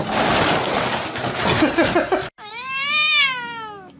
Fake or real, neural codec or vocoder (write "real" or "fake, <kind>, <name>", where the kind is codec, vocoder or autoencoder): real